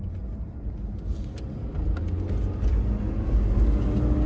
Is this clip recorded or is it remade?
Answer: recorded